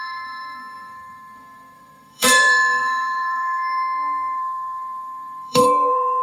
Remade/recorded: remade